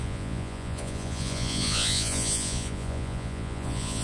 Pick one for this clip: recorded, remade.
remade